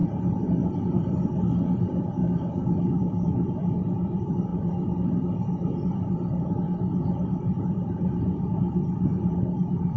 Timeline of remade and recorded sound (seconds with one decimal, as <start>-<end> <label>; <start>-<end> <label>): 0.0-2.2 recorded; 2.2-3.3 remade; 3.3-10.0 recorded